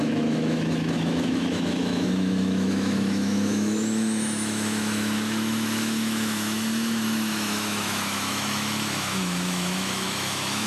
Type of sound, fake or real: fake